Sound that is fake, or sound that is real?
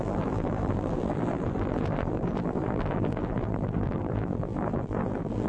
fake